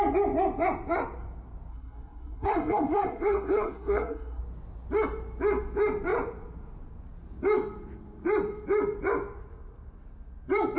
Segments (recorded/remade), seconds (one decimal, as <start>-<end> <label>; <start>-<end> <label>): 0.0-1.7 recorded; 1.7-4.4 remade; 4.4-10.8 recorded